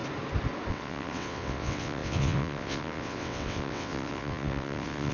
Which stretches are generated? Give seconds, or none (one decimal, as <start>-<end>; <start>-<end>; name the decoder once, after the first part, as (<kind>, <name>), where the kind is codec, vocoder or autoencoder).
0.7-5.1 (vocoder, WaveNeXt)

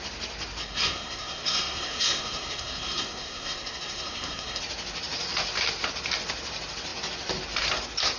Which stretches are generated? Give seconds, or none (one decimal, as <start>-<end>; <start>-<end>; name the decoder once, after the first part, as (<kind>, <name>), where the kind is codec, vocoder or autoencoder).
0.6-4.6 (codec, SNAC)

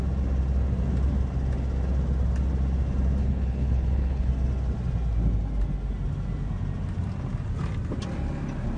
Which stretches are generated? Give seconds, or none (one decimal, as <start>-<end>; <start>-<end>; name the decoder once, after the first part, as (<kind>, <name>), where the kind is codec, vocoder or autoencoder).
3.2-4.3 (codec, HILCodec)

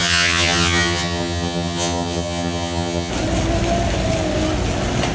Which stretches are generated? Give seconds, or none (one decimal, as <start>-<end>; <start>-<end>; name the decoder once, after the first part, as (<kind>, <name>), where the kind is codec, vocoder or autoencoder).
0.0-3.1 (vocoder, HiFi-GAN)